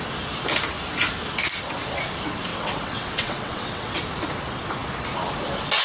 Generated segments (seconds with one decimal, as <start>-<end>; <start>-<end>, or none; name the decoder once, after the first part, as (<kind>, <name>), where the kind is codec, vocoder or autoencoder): 2.5-4.0 (vocoder, WaveNeXt)